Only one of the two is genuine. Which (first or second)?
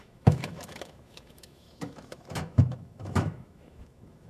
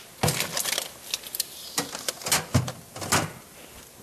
second